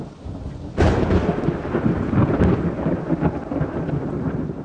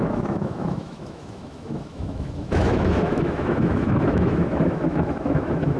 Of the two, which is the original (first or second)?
first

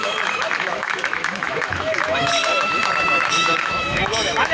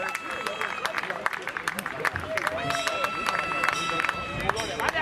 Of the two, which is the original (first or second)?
second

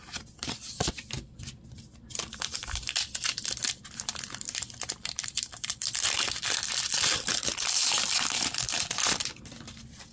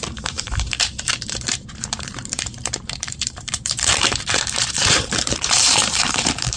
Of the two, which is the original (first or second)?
first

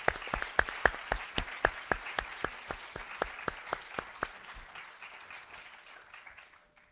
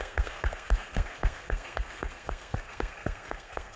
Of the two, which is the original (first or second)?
first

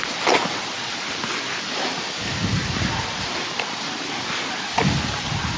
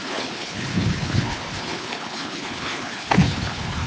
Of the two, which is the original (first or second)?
first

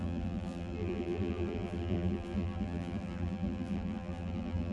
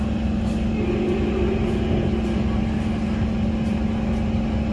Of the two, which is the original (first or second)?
second